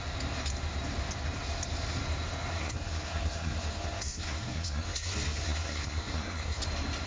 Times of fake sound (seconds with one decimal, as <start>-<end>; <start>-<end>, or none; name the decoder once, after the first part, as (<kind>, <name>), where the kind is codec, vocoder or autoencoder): 2.5-6.6 (codec, SNAC)

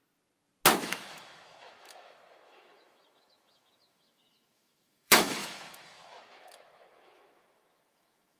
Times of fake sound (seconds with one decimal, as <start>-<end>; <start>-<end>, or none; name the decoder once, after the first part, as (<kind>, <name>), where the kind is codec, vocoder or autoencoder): 0.8-8.4 (autoencoder, DAC-VAE)

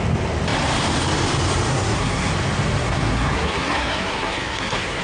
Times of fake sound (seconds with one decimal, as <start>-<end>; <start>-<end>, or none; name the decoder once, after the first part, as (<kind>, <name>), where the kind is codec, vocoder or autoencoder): 1.7-2.3 (codec, SNAC); 2.8-5.0

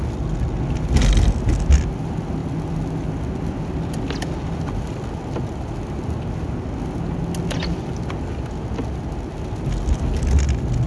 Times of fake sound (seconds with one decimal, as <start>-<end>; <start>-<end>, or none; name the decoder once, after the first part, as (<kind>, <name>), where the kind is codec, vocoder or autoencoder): none

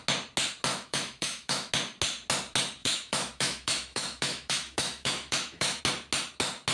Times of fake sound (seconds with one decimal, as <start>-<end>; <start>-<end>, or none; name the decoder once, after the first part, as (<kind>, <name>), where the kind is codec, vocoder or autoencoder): 0.7-1.7 (autoencoder, DAC-VAE); 2.8-5.8

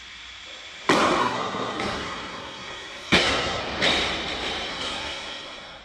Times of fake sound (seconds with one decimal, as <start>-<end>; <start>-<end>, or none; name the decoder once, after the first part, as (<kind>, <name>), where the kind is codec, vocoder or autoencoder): 1.2-3.6 (codec, SNAC); 4.7-5.8

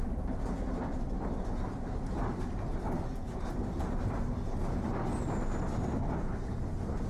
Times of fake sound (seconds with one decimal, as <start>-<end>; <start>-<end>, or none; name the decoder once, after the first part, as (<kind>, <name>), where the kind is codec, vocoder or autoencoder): none